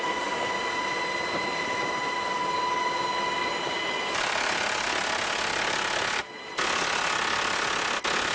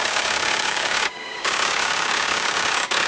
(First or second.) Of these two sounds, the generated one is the second